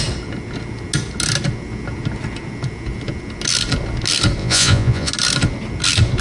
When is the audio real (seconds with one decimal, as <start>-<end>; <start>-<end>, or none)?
0.0-4.4; 5.1-6.2